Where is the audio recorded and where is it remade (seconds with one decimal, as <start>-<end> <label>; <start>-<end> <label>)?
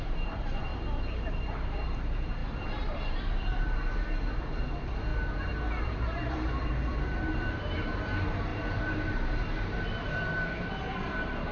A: 0.0-0.7 remade; 0.7-1.3 recorded; 1.3-5.1 remade; 5.1-5.8 recorded; 5.8-11.5 remade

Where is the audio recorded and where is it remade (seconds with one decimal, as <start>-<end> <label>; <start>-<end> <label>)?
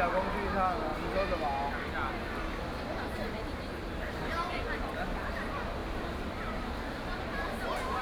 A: 0.0-8.0 recorded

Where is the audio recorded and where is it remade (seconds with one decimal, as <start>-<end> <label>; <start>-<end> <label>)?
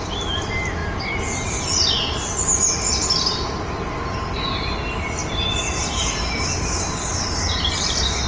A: 0.0-8.3 recorded